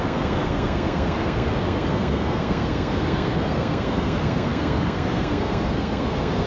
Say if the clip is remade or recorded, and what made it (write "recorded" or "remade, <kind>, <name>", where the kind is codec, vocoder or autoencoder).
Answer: remade, codec, SNAC